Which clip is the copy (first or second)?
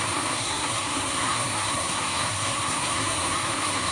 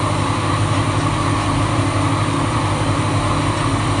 first